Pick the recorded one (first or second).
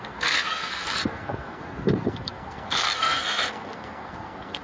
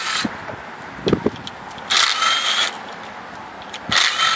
second